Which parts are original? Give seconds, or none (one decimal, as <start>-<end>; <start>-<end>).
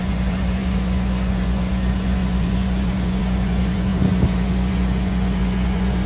none